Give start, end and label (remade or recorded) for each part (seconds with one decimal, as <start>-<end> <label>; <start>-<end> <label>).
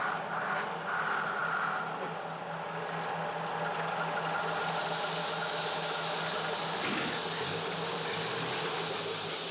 0.0-5.2 recorded; 5.2-6.1 remade; 6.1-9.5 recorded